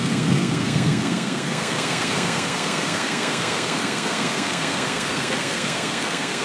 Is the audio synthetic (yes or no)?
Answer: yes